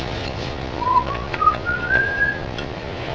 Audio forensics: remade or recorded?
remade